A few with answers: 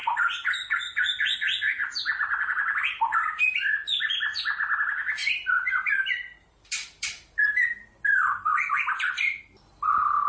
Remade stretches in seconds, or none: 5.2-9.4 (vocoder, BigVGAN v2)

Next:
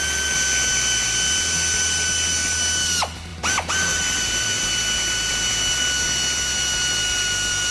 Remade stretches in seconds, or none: 3.3-4.7 (vocoder, BigVGAN v2)

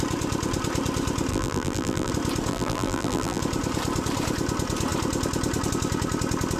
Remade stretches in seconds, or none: 1.3-2.1 (vocoder, BigVGAN v2); 2.5-3.4

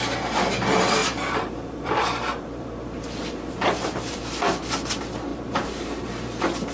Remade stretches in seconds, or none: 1.0-4.2 (vocoder, BigVGAN v2); 5.3-6.1

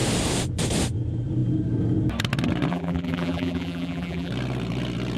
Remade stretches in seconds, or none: 2.7-4.3 (vocoder, BigVGAN v2)